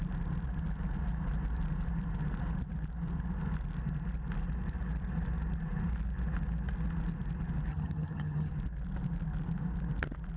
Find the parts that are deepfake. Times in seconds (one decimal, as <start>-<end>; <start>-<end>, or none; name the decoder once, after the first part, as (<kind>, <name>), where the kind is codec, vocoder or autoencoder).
7.7-8.5 (vocoder, HiFi-GAN)